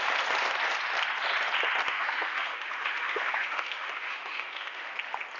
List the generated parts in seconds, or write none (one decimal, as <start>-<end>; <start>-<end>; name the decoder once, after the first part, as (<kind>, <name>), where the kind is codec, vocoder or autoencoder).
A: 1.9-4.9 (autoencoder, DAC-VAE)